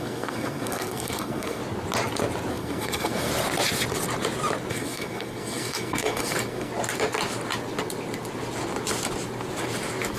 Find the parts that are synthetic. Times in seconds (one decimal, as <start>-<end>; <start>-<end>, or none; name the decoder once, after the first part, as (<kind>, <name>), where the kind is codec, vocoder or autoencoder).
0.0-1.6 (codec, SNAC); 2.5-3.3; 4.7-6.7